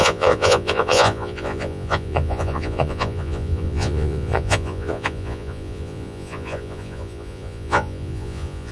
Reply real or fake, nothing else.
fake